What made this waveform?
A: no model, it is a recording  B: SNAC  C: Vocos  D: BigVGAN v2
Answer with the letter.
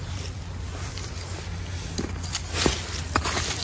A